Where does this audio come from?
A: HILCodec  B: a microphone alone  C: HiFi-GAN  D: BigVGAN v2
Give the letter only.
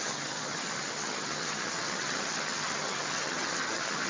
C